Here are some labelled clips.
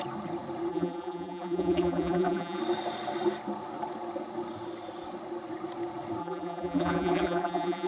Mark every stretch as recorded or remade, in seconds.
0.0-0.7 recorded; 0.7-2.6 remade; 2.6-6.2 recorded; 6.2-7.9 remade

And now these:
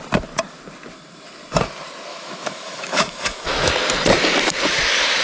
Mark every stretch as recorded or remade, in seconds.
0.0-2.1 recorded; 2.1-3.7 remade; 3.7-5.2 recorded

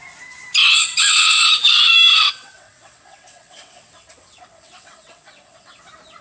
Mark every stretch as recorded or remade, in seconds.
0.0-0.6 recorded; 0.6-1.4 remade; 1.4-2.1 recorded; 2.1-5.8 remade; 5.8-6.2 recorded

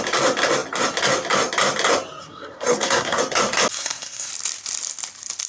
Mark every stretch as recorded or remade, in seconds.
0.0-2.2 recorded; 2.2-3.2 remade; 3.2-3.7 recorded; 3.7-4.3 remade; 4.3-5.5 recorded

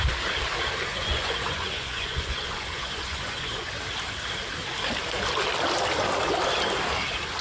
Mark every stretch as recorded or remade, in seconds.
0.0-0.9 recorded; 0.9-3.7 remade; 3.7-7.4 recorded